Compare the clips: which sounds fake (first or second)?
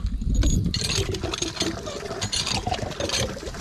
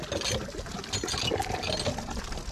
first